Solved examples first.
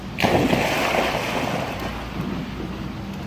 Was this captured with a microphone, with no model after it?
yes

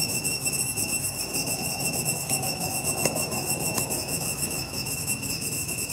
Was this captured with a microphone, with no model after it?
no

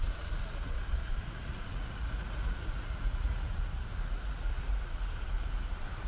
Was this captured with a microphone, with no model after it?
no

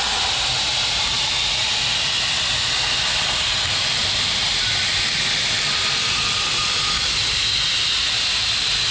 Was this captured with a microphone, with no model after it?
yes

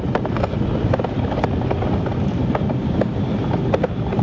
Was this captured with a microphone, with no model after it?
yes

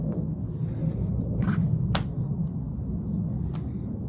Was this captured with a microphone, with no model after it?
yes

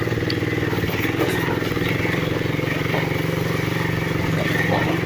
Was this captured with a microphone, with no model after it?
yes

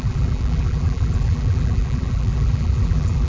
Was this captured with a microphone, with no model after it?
no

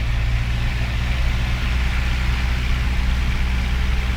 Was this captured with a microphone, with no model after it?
yes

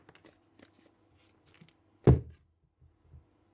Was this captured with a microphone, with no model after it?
yes